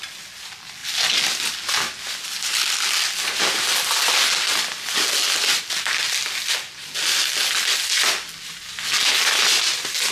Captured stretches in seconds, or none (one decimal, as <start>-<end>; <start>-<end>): 0.0-10.1